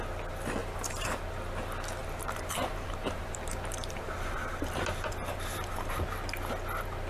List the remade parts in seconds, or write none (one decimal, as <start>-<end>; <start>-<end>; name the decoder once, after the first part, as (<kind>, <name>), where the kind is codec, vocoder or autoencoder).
0.6-1.2 (vocoder, BigVGAN v2); 2.0-6.0